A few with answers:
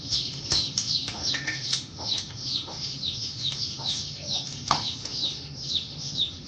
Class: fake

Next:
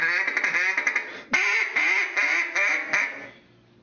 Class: real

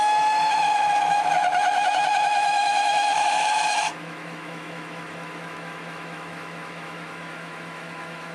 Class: fake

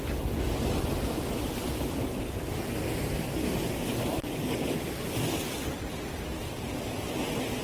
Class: real